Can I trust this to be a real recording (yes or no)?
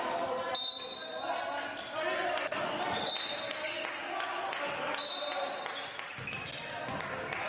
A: yes